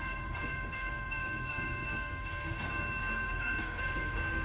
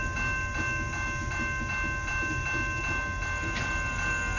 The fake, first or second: first